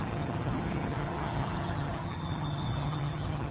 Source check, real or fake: fake